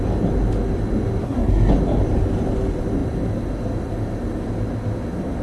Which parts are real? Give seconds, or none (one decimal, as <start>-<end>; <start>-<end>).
0.0-1.2; 1.7-5.4